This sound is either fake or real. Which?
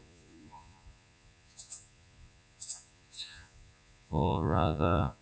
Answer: fake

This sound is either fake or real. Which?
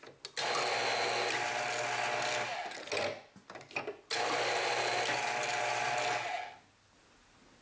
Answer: real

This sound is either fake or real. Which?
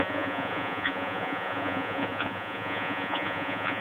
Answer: fake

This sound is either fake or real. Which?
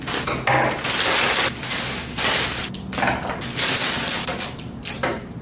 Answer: real